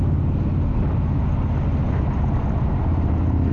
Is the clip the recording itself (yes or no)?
yes